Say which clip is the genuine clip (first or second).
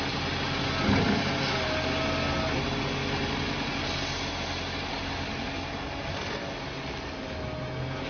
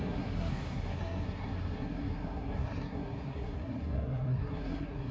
first